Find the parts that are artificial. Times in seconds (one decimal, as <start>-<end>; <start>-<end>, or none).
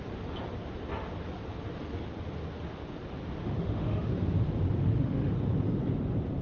3.4-4.1; 4.8-5.3